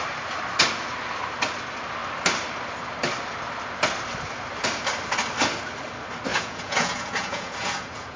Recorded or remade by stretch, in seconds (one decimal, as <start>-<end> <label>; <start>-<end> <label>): 0.0-6.3 recorded; 6.3-8.2 remade